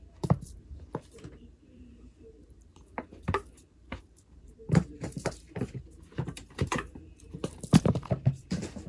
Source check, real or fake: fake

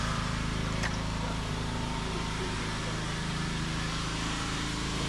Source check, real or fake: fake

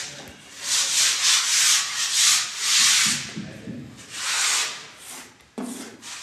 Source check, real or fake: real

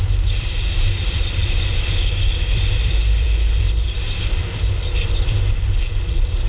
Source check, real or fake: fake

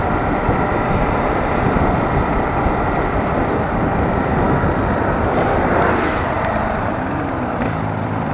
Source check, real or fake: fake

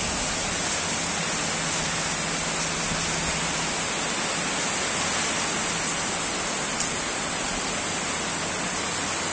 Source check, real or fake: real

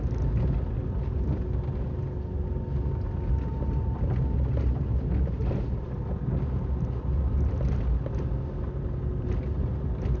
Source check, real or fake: real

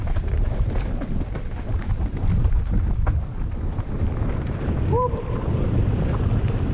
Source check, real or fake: fake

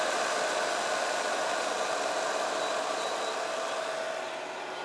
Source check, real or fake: real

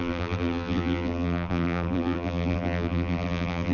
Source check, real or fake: fake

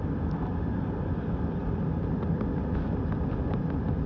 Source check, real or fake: real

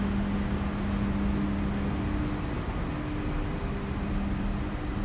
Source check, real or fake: real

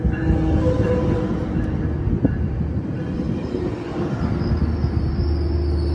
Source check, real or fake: real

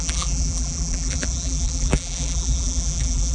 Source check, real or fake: fake